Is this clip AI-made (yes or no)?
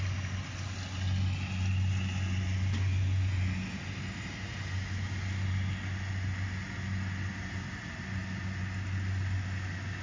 no